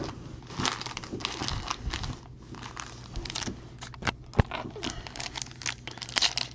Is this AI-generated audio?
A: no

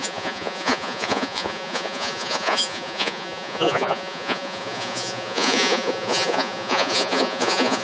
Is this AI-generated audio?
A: yes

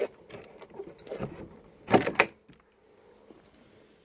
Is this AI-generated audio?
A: no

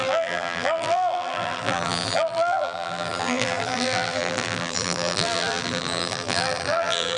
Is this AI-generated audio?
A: yes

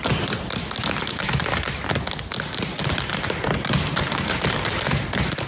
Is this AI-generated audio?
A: no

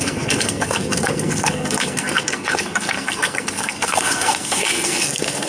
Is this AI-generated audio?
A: yes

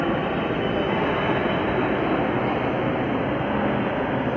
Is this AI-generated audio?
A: no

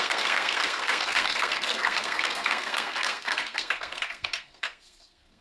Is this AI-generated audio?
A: yes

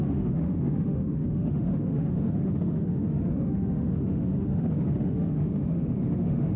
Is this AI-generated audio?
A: yes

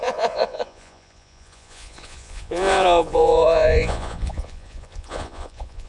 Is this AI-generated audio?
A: yes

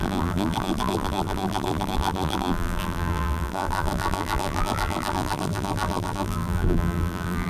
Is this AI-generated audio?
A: yes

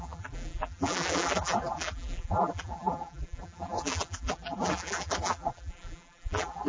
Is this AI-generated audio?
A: yes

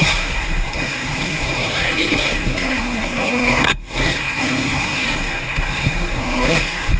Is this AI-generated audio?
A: yes